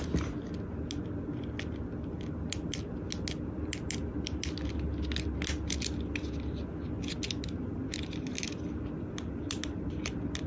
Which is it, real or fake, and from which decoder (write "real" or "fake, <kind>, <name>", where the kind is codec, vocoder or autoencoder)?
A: real